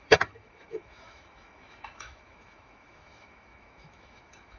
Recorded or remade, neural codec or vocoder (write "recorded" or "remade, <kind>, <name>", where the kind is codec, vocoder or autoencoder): remade, autoencoder, DAC-VAE